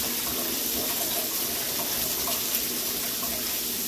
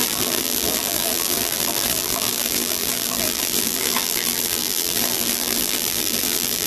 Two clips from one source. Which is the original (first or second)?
first